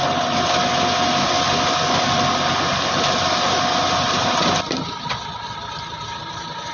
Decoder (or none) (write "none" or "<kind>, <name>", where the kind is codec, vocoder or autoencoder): none